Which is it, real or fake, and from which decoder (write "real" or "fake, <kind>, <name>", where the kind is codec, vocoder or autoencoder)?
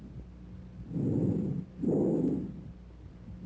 fake, vocoder, BigVGAN v2